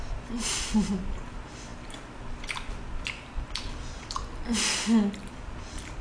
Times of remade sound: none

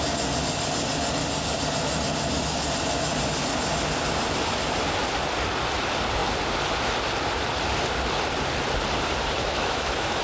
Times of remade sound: 9.4-10.2